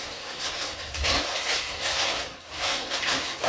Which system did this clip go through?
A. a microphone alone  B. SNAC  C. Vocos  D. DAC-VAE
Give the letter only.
B